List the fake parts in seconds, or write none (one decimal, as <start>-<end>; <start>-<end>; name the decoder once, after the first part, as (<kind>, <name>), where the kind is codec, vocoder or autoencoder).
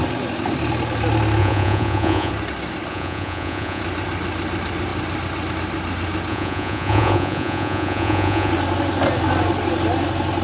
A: 1.4-2.3 (vocoder, Vocos); 2.9-3.8; 6.3-8.5